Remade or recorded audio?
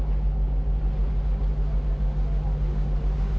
recorded